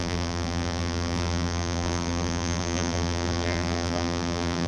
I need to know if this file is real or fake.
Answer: fake